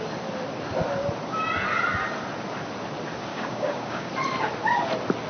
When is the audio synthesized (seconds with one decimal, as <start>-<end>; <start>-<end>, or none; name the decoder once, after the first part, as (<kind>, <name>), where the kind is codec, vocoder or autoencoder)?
3.3-4.1 (codec, DAC)